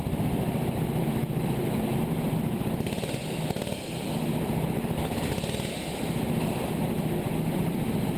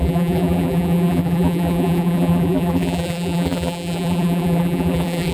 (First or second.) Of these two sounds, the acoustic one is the first